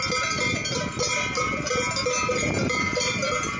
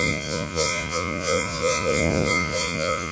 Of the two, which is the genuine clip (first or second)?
first